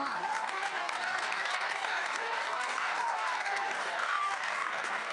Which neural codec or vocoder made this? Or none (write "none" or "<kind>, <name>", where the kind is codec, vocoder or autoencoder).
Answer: codec, DAC